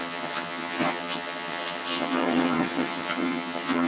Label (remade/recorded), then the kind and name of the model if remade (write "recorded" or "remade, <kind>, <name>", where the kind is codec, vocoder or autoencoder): remade, vocoder, HiFi-GAN